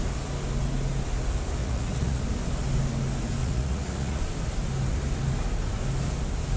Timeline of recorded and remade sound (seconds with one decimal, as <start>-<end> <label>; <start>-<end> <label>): 0.0-1.6 recorded; 1.6-2.2 remade; 2.2-3.4 recorded; 3.4-4.2 remade; 4.2-6.6 recorded